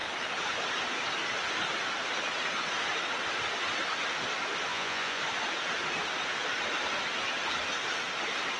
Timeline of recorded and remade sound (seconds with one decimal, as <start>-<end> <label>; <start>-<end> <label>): 0.0-4.7 recorded; 4.7-5.2 remade; 5.2-8.6 recorded